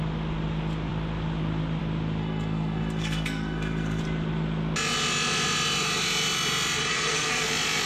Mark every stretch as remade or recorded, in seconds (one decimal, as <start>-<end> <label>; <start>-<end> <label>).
0.0-2.2 recorded; 2.2-4.0 remade; 4.0-6.9 recorded; 6.9-7.5 remade; 7.5-7.9 recorded